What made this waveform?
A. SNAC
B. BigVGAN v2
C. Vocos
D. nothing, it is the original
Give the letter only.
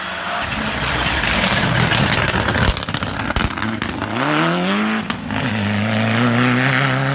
D